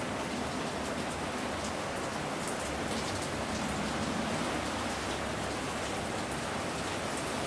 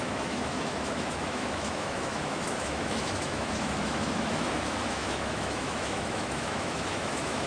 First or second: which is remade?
second